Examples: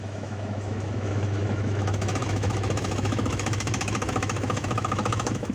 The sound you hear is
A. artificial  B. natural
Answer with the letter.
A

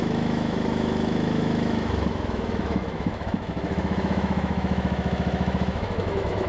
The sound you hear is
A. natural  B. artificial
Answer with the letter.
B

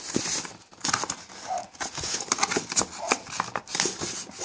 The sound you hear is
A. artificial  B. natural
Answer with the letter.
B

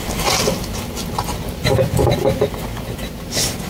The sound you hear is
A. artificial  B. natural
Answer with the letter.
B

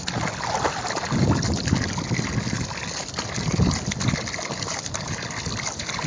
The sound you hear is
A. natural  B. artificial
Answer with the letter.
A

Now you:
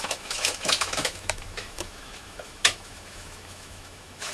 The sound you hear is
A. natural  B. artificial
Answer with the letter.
B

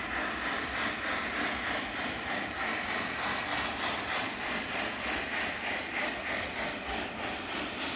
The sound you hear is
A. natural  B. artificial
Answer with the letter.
A